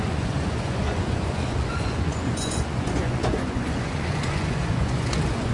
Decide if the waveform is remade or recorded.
remade